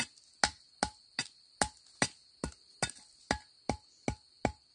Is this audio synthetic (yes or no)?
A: no